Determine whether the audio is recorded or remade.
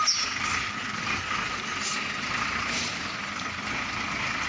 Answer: recorded